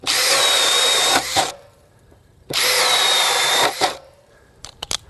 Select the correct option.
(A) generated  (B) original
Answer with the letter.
A